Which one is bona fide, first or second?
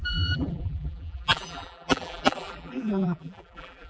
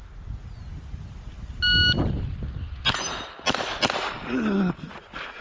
second